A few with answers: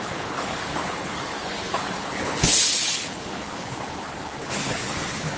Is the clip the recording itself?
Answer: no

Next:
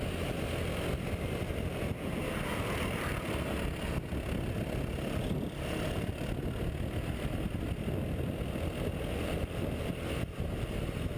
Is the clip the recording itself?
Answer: yes